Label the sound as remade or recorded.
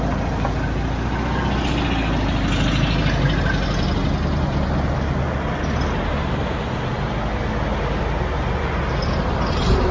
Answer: recorded